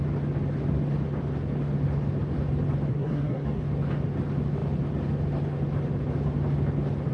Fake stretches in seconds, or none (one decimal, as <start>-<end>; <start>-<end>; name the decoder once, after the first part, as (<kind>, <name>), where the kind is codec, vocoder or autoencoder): 2.9-3.6 (codec, SNAC)